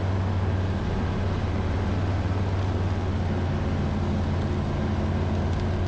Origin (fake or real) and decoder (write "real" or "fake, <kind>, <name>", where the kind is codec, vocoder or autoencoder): real